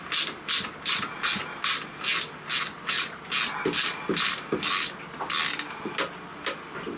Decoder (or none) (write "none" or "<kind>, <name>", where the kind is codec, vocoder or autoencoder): none